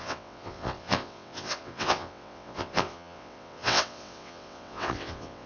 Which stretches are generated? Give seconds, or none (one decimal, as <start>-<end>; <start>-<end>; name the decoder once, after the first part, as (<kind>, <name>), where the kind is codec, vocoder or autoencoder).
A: 0.0-5.5 (vocoder, WaveNeXt)